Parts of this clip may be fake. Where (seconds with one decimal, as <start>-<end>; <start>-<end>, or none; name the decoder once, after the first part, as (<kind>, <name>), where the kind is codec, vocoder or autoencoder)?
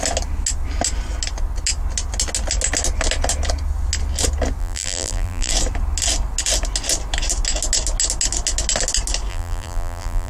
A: 4.6-5.5 (vocoder, BigVGAN v2); 9.3-10.3